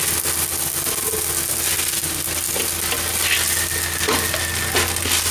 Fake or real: real